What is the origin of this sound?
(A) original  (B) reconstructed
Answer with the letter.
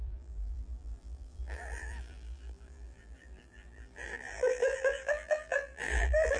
B